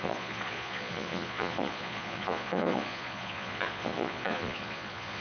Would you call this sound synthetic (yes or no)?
yes